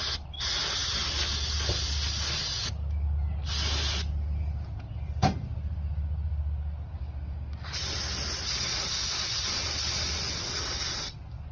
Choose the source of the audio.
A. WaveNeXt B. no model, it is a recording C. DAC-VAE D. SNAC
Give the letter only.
B